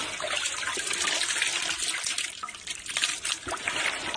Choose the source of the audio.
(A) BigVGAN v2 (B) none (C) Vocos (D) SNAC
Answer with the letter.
B